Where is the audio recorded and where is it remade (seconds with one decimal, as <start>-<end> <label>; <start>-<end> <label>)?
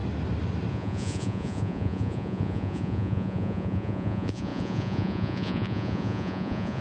0.0-0.7 recorded; 0.7-6.8 remade